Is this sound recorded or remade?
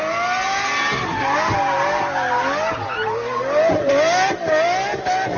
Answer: recorded